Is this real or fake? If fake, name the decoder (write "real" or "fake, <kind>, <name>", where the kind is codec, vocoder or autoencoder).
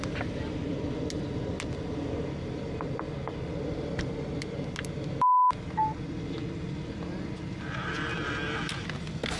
real